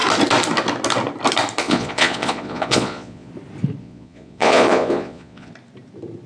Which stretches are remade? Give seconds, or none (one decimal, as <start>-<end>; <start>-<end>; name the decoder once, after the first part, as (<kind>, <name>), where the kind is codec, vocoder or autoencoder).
1.6-3.3 (vocoder, Vocos); 3.8-5.5